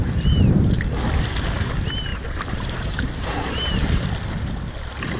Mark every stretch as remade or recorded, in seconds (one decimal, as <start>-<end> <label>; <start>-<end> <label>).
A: 0.0-2.1 recorded; 2.1-4.1 remade; 4.1-5.2 recorded